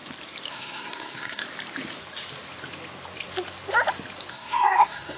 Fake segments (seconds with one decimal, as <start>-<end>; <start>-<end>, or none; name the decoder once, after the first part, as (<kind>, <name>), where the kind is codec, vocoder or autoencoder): 0.5-1.4 (codec, SNAC); 4.3-5.2